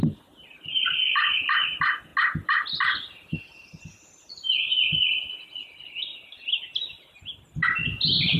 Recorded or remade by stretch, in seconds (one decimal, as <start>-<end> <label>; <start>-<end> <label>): 0.0-8.4 recorded

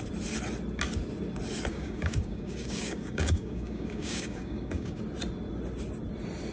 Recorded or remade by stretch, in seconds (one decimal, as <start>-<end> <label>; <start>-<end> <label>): 0.0-1.7 recorded; 1.7-5.0 remade; 5.0-6.5 recorded

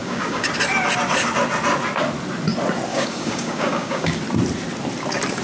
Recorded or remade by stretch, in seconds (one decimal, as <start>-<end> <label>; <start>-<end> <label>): 0.0-0.5 remade; 0.5-2.9 recorded; 2.9-4.2 remade; 4.2-5.4 recorded

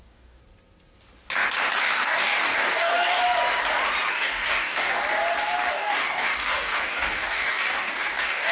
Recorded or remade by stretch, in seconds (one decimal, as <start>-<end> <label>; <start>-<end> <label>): 0.0-0.4 remade; 0.4-1.8 recorded; 1.8-3.2 remade; 3.2-4.1 recorded; 4.1-5.0 remade; 5.0-5.7 recorded; 5.7-8.5 remade

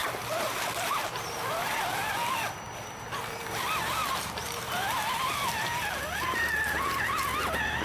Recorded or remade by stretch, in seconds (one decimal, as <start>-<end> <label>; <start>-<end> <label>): 0.0-7.8 recorded

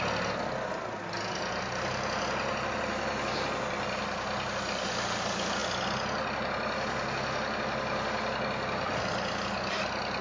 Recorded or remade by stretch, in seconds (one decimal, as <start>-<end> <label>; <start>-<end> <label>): 0.0-10.2 recorded